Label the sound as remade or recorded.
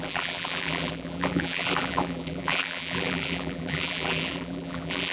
remade